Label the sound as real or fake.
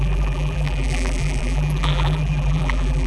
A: fake